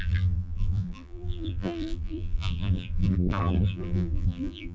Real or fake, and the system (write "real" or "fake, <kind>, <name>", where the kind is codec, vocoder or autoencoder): fake, vocoder, BigVGAN v2